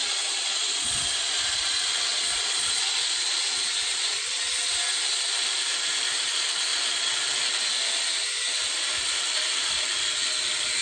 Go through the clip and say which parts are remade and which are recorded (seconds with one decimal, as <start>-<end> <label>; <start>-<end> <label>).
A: 0.0-1.2 remade; 1.2-2.1 recorded; 2.1-4.5 remade; 4.5-10.8 recorded

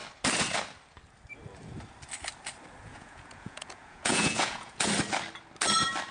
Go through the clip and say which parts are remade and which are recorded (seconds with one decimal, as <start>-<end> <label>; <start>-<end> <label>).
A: 0.0-2.9 recorded; 2.9-4.9 remade; 4.9-6.1 recorded

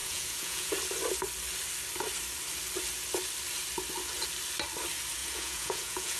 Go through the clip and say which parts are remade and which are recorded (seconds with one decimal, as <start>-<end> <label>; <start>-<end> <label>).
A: 0.0-0.7 remade; 0.7-5.2 recorded; 5.2-6.2 remade

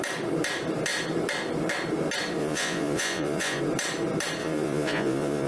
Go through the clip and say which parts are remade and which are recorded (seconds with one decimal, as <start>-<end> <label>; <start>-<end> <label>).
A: 0.0-2.4 recorded; 2.4-3.6 remade; 3.6-4.4 recorded; 4.4-5.5 remade

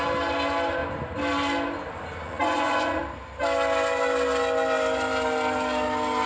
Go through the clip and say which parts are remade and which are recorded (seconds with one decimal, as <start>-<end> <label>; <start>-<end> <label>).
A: 0.0-2.2 recorded; 2.2-3.0 remade; 3.0-6.3 recorded

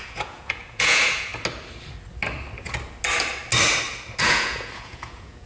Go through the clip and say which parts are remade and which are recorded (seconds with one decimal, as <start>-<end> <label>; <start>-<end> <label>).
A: 0.0-1.3 remade; 1.3-4.2 recorded; 4.2-5.5 remade

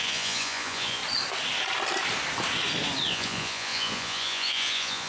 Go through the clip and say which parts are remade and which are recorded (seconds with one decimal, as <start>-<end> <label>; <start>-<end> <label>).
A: 0.0-1.0 remade; 1.0-3.1 recorded; 3.1-5.1 remade

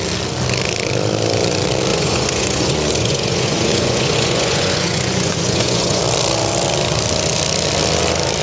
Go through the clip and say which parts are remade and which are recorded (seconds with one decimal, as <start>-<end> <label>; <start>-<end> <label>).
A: 0.0-1.9 recorded; 1.9-6.0 remade; 6.0-8.4 recorded